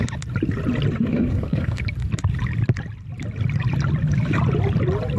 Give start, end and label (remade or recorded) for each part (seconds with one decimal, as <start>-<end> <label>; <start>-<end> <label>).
0.0-1.1 recorded; 1.1-1.8 remade; 1.8-5.2 recorded